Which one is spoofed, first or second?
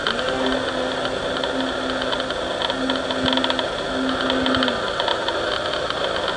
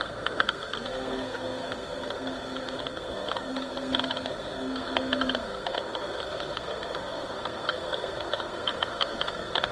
second